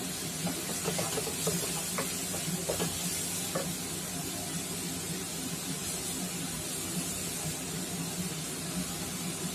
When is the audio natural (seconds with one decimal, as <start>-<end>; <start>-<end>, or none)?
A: 0.0-9.5